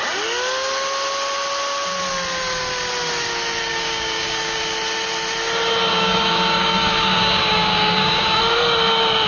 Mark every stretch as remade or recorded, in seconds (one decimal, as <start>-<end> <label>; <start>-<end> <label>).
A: 0.0-3.7 recorded; 3.7-4.6 remade; 4.6-5.9 recorded; 5.9-8.4 remade; 8.4-9.3 recorded

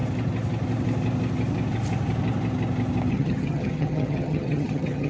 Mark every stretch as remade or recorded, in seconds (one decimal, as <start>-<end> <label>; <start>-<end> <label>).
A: 0.0-3.1 recorded; 3.1-5.1 remade